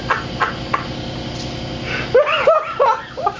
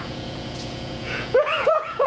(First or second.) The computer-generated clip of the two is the second